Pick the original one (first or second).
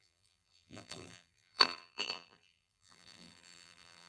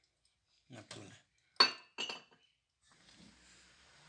second